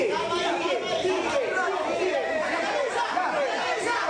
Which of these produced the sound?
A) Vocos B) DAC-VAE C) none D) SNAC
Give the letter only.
C